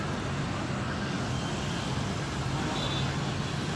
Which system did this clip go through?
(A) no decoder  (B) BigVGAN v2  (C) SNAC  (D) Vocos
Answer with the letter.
A